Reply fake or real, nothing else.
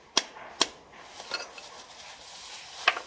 real